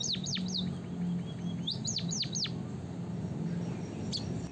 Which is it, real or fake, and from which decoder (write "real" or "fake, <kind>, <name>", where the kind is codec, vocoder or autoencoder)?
real